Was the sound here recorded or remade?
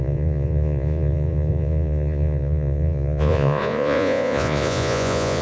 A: remade